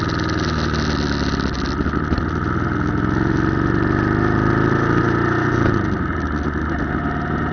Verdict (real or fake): real